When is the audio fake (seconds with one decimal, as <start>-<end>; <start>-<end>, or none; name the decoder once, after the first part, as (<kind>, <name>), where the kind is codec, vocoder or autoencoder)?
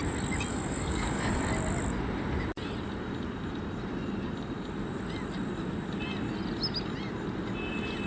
0.5-1.4 (codec, DAC)